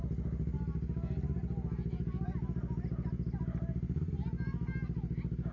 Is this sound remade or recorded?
recorded